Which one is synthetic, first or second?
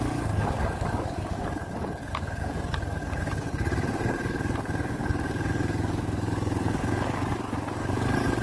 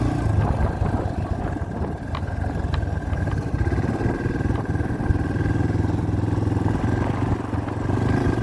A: first